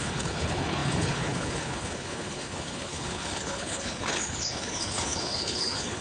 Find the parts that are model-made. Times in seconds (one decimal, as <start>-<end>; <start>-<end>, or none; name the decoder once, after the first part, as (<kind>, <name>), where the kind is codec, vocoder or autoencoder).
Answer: 0.0-6.0 (codec, HILCodec)